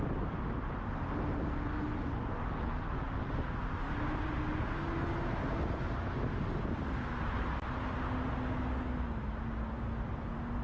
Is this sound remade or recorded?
recorded